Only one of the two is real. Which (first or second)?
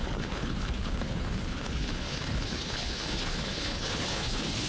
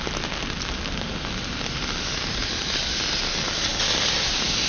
second